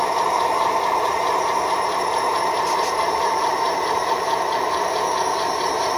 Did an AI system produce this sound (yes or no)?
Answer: yes